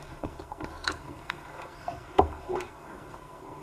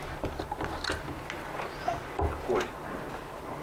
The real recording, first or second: second